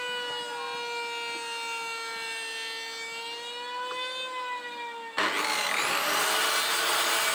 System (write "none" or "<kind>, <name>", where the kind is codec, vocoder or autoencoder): none